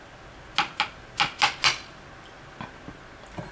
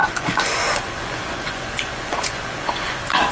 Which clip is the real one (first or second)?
first